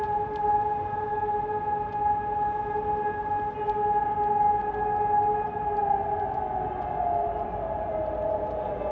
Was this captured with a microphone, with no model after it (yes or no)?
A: yes